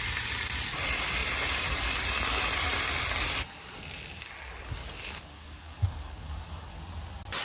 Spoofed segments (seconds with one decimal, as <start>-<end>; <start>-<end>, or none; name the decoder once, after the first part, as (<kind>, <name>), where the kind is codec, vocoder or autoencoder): 4.8-6.7 (codec, DAC)